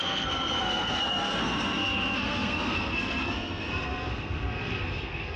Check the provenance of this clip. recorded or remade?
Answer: remade